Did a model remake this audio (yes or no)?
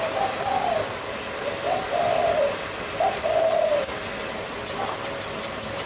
yes